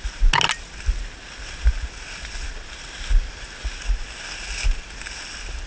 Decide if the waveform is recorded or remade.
recorded